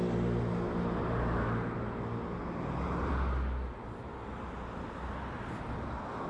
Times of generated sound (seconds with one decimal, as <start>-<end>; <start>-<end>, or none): none